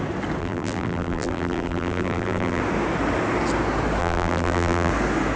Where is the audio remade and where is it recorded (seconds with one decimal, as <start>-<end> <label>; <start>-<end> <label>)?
0.0-0.4 recorded; 0.4-2.6 remade; 2.6-4.0 recorded; 4.0-4.9 remade; 4.9-5.4 recorded